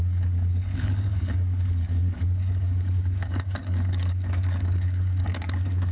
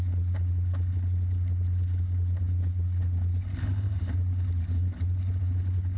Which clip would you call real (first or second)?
second